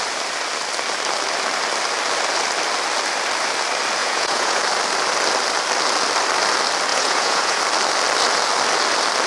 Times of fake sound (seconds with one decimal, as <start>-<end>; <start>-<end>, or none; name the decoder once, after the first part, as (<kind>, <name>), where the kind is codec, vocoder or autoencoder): 4.0-4.6 (vocoder, Vocos); 6.9-7.6